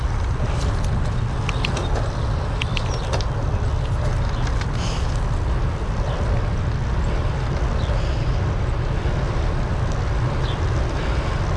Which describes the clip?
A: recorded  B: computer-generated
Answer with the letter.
A